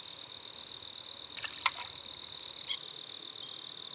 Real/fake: fake